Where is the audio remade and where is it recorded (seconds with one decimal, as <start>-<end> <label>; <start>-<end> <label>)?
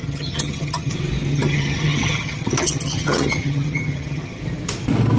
0.0-0.9 remade; 0.9-1.3 recorded; 1.3-4.4 remade; 4.4-5.2 recorded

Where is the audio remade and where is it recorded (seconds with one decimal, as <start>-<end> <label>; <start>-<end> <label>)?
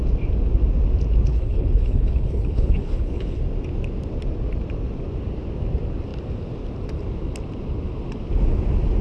0.0-1.3 recorded; 1.3-3.4 remade; 3.4-9.0 recorded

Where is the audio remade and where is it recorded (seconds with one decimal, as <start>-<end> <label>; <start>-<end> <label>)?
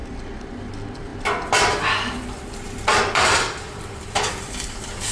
0.0-0.6 recorded; 0.6-5.1 remade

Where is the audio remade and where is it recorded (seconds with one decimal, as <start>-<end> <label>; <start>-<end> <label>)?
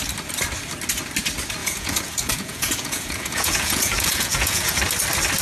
0.0-1.6 recorded; 1.6-4.8 remade; 4.8-5.4 recorded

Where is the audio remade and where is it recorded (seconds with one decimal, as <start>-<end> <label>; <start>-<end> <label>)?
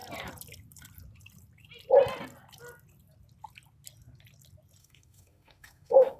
0.0-4.8 recorded; 4.8-6.2 remade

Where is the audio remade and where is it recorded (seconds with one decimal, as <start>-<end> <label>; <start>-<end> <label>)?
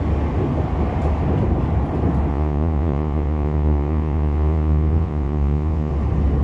0.0-2.3 recorded; 2.3-5.9 remade; 5.9-6.4 recorded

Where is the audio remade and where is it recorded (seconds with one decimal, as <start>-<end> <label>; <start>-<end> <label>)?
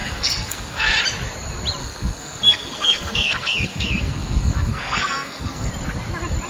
0.0-0.9 remade; 0.9-1.8 recorded; 1.8-5.7 remade; 5.7-6.5 recorded